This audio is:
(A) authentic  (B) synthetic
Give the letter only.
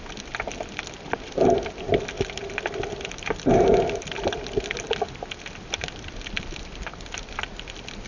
A